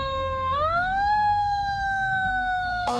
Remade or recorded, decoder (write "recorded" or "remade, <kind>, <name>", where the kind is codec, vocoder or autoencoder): remade, codec, SNAC